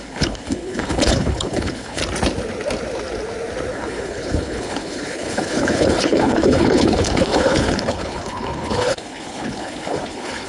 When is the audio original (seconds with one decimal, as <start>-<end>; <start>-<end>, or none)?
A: 2.0-3.7